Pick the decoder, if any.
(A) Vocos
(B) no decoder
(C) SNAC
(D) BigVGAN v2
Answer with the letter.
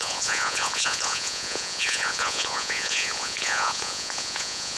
A